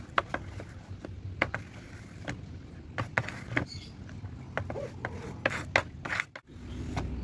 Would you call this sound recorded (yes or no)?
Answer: yes